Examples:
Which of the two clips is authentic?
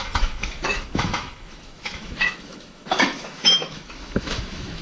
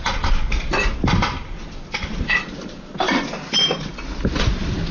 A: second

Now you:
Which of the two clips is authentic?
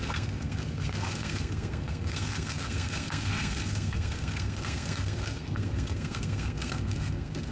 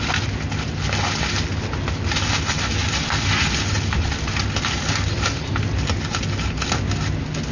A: second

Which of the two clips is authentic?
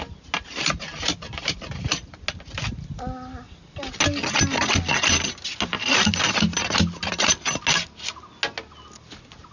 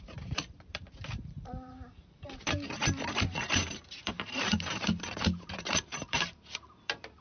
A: first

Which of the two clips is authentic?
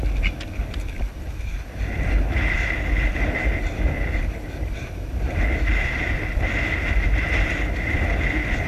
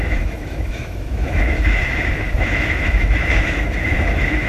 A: first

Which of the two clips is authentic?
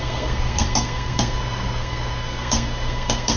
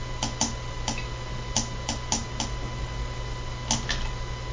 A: second